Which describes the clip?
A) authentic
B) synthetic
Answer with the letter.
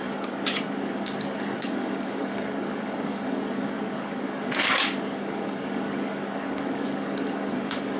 B